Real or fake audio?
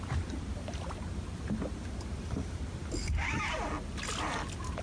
real